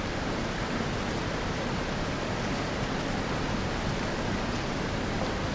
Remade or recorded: remade